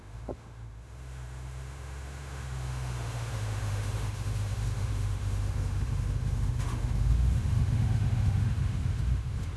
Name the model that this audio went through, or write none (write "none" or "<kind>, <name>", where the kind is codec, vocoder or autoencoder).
autoencoder, DAC-VAE